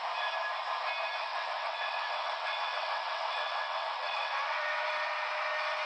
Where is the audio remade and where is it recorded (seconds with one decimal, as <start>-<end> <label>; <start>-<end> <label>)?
0.0-1.3 recorded; 1.3-4.8 remade; 4.8-5.9 recorded